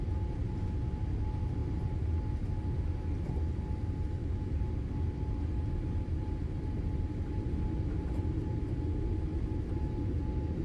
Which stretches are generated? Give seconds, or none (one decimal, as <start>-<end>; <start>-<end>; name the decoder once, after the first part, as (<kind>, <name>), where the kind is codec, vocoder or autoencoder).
none